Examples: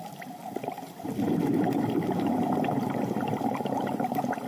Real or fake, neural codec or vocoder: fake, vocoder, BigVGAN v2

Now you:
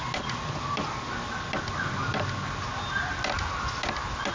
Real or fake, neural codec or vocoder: real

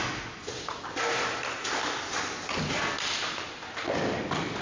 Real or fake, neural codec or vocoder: real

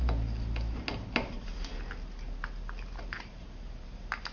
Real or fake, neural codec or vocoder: real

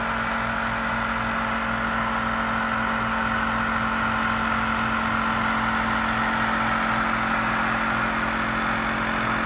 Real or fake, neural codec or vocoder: real